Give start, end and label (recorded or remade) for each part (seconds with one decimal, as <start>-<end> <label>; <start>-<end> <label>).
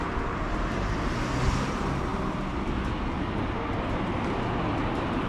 0.0-2.1 recorded; 2.1-3.8 remade; 3.8-5.3 recorded